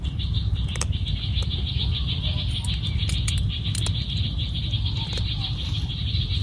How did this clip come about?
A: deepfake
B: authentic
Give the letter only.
B